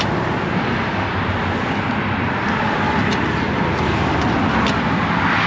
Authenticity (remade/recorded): recorded